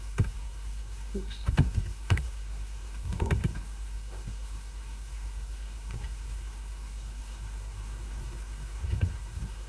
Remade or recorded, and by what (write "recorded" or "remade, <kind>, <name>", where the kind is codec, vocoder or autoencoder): remade, codec, SNAC